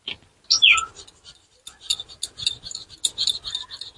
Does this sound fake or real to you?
real